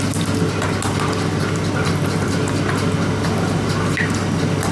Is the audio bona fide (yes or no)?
yes